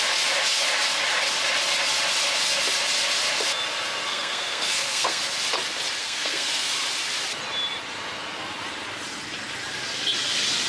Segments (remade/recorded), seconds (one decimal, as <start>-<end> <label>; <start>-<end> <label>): 0.0-4.1 recorded; 4.1-5.2 remade; 5.2-6.0 recorded; 6.0-6.7 remade; 6.7-10.7 recorded